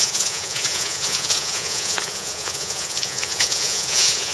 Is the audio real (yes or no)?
no